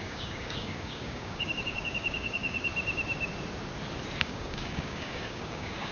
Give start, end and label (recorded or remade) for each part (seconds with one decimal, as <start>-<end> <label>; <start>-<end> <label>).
0.0-2.7 remade; 2.7-4.2 recorded; 4.2-5.9 remade